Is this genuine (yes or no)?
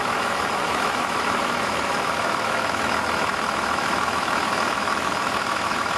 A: no